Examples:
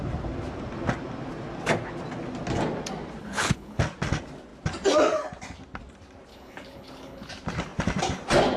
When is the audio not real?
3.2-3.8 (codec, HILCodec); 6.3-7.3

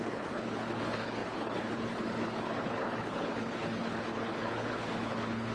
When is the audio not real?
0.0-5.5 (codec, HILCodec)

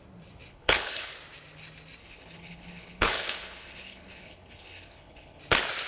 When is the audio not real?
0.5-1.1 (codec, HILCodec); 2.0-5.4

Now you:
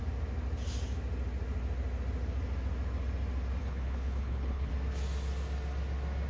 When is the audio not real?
3.6-4.7 (codec, HILCodec)